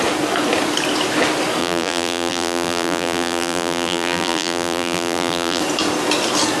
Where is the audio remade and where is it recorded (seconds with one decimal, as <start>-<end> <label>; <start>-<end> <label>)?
0.0-1.6 recorded; 1.6-5.6 remade; 5.6-6.6 recorded